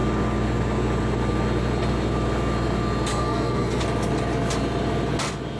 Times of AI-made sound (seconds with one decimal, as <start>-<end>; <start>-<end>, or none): 3.1-3.8